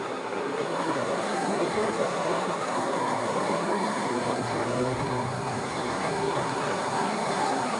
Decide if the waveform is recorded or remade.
remade